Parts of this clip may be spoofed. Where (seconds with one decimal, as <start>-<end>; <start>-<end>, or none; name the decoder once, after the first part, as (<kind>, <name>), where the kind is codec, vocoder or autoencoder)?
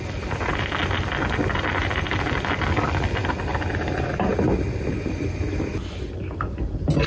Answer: none